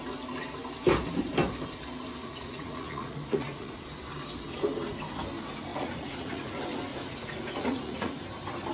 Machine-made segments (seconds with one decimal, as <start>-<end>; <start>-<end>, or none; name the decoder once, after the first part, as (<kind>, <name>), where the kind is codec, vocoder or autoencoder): 2.2-3.8 (vocoder, Vocos); 5.7-6.5; 6.9-8.2